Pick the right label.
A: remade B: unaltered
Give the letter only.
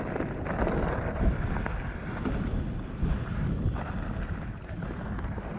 B